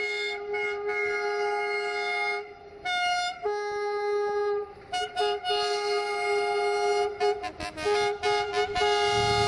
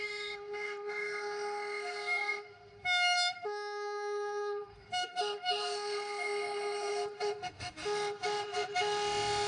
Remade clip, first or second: second